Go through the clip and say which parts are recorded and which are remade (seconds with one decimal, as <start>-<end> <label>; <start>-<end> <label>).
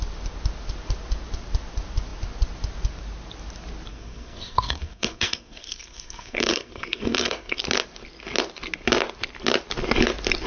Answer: 0.0-3.9 recorded; 3.9-7.6 remade; 7.6-10.5 recorded